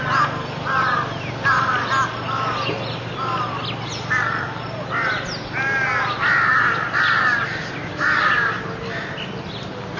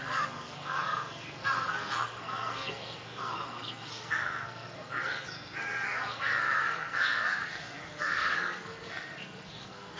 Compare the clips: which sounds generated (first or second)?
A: second